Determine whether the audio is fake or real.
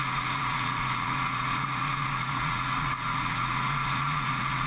fake